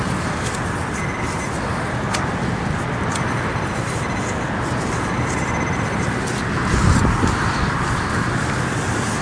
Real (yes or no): yes